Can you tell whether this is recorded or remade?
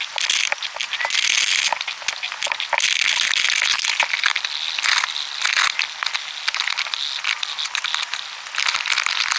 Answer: recorded